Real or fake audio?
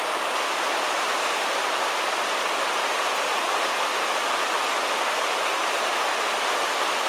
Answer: real